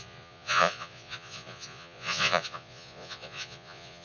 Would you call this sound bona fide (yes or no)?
no